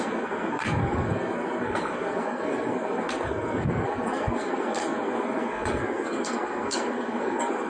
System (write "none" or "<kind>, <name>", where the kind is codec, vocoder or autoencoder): codec, SNAC